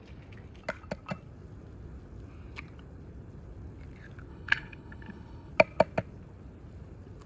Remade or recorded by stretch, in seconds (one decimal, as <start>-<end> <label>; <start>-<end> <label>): 0.0-4.3 recorded; 4.3-5.5 remade; 5.5-7.3 recorded